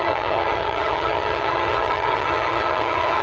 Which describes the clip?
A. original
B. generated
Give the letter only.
B